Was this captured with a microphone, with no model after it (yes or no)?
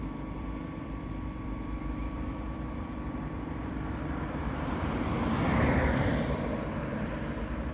no